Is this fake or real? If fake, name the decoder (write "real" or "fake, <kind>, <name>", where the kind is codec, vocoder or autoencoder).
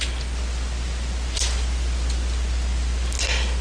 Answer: real